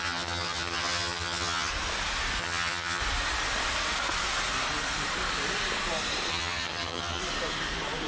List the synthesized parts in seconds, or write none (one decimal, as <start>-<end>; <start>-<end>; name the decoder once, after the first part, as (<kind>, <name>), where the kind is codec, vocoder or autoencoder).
0.0-1.7 (vocoder, HiFi-GAN); 2.4-3.0; 6.3-7.2